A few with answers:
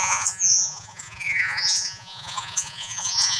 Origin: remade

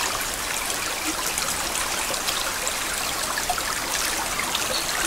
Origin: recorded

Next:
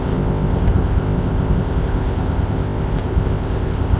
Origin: remade